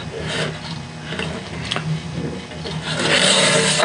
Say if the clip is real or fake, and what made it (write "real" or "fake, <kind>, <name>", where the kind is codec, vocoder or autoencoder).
real